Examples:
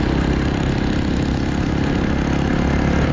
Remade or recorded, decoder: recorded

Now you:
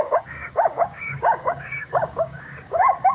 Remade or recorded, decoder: remade, codec, DAC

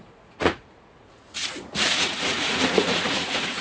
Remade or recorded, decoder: remade, vocoder, Vocos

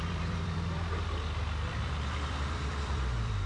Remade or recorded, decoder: remade, vocoder, BigVGAN v2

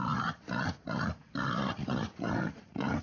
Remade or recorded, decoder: remade, vocoder, Vocos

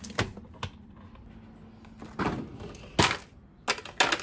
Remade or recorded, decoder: recorded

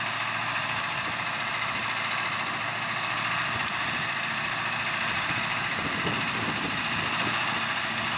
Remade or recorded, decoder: remade, vocoder, BigVGAN v2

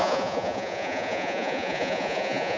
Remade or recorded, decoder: remade, vocoder, Vocos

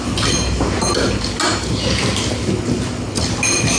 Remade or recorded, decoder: recorded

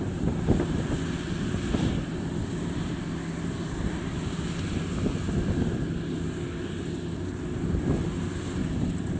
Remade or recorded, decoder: recorded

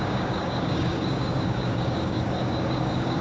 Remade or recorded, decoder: remade, codec, DAC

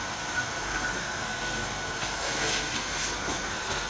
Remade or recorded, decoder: remade, codec, SNAC